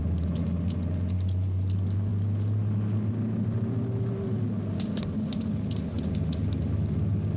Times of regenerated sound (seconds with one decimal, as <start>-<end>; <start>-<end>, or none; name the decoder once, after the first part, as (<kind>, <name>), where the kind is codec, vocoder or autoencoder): none